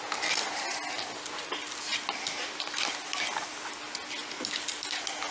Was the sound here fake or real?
real